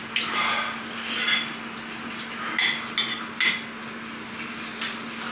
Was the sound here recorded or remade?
recorded